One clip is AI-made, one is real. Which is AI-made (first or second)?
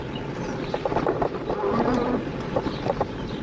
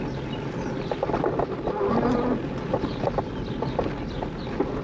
first